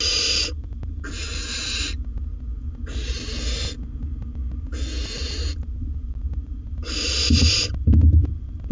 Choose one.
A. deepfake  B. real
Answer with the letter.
B